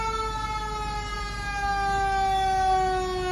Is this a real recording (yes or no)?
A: yes